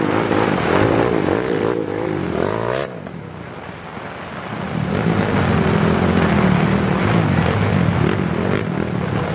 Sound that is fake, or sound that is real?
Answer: real